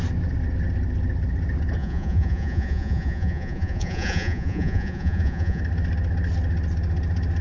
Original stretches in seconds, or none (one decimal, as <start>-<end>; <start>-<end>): 0.0-1.8; 5.6-7.4